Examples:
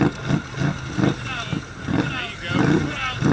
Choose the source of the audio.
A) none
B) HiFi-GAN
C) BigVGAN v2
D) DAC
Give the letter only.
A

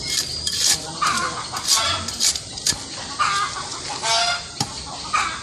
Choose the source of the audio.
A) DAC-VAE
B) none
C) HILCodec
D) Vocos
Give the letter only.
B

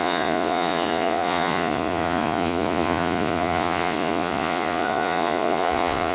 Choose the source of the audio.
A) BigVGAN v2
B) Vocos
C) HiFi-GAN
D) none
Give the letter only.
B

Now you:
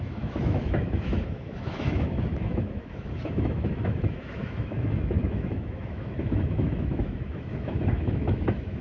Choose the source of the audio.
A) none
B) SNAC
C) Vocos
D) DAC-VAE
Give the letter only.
D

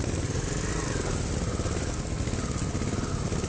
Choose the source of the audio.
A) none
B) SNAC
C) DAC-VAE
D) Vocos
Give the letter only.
A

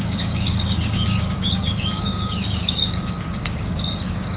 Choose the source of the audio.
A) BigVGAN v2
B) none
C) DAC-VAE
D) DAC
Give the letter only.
D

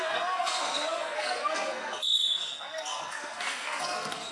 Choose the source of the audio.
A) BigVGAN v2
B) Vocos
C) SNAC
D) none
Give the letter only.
C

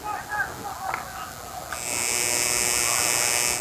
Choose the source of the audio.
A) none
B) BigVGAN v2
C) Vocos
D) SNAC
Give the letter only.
A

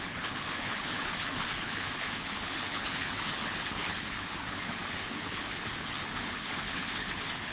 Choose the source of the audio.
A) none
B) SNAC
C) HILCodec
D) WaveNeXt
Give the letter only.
C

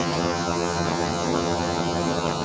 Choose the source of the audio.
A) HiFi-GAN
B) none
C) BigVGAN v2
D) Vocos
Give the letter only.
A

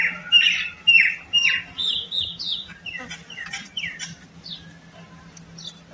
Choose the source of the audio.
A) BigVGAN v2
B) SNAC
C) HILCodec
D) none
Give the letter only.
D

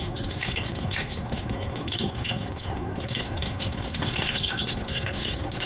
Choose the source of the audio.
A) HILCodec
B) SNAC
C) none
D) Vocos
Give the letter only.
B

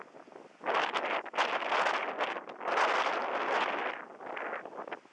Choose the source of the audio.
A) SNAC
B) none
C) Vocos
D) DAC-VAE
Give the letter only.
B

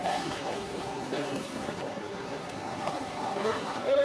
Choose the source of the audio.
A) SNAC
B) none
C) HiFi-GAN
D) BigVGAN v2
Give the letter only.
A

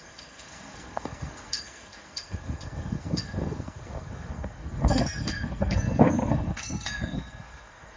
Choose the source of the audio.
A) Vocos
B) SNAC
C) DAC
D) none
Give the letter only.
B